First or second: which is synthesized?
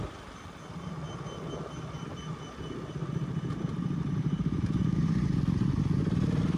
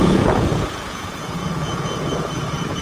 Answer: second